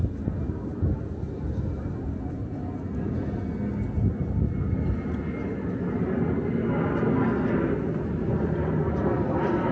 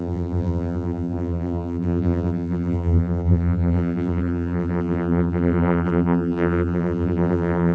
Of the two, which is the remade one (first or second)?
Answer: second